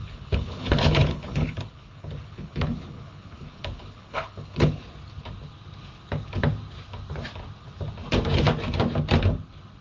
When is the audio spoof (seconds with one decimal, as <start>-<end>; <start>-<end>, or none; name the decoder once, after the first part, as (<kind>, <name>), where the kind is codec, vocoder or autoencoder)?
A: 0.0-4.8 (codec, HILCodec)